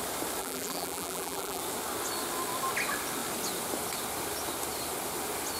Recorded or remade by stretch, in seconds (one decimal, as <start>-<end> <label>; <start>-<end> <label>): 0.0-0.4 recorded; 0.4-1.6 remade; 1.6-5.6 recorded